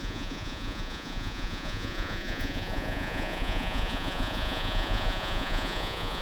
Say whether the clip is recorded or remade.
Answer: remade